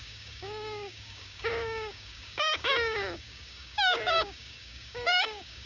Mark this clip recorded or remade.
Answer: remade